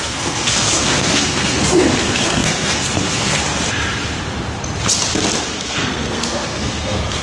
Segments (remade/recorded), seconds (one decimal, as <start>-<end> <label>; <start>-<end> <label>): 0.0-3.4 remade; 3.4-5.4 recorded; 5.4-7.2 remade